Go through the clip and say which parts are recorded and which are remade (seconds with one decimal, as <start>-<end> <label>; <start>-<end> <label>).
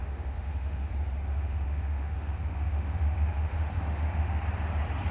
0.0-0.9 remade; 0.9-1.3 recorded; 1.3-4.4 remade; 4.4-5.1 recorded